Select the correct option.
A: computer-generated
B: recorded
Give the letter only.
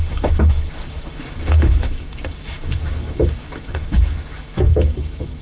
A